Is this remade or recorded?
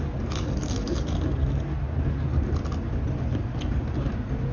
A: recorded